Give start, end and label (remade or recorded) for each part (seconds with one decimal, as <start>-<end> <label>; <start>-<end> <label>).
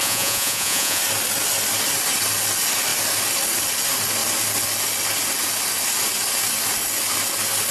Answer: 0.0-1.0 remade; 1.0-7.7 recorded